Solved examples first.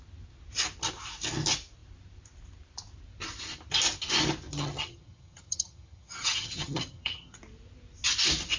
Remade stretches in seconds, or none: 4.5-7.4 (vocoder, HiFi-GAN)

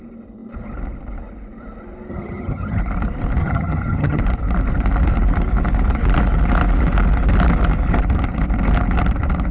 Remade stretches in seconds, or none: 2.1-2.8 (vocoder, HiFi-GAN); 3.4-4.2

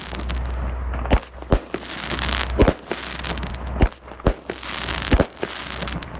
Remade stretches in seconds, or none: none

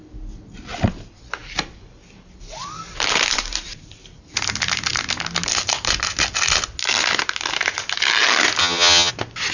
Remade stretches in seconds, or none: 8.6-9.1 (vocoder, HiFi-GAN)